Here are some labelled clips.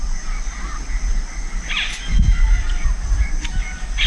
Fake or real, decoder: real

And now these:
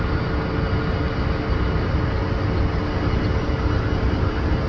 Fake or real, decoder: real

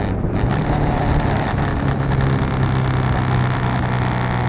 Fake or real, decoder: real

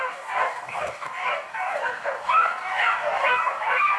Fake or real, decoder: fake, codec, DAC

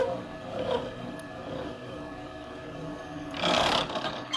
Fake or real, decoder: fake, codec, DAC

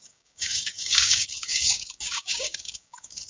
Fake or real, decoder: fake, codec, DAC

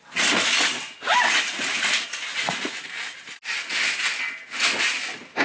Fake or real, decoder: real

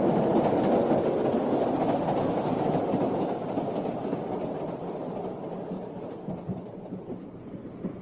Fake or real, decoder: real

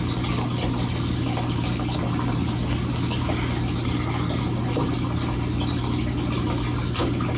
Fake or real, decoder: real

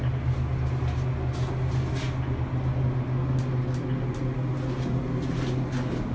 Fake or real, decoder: real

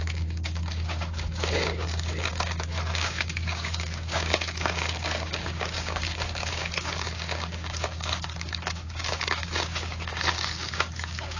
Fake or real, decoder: fake, codec, DAC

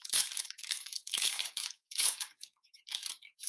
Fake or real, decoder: fake, codec, DAC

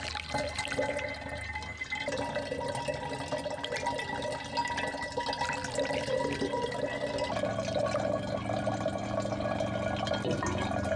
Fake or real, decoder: real